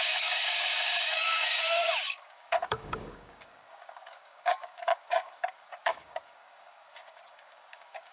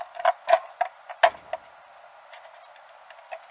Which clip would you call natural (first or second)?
second